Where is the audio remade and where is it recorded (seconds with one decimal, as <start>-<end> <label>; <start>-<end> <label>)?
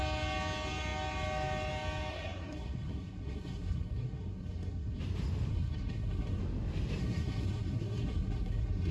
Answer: 0.0-2.1 recorded; 2.1-5.0 remade; 5.0-5.5 recorded; 5.5-6.4 remade; 6.4-7.0 recorded; 7.0-8.9 remade